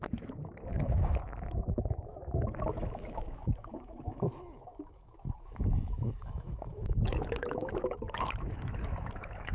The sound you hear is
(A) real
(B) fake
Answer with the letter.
B